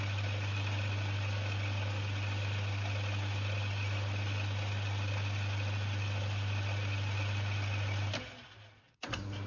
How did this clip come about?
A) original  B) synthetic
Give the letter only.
A